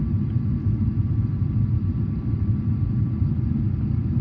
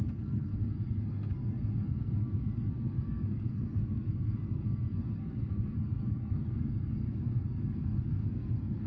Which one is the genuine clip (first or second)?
first